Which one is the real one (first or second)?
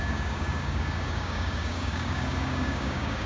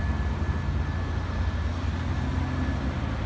second